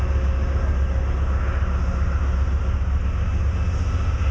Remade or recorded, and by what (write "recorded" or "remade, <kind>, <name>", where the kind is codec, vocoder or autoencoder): recorded